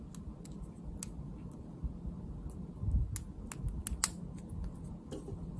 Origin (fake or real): real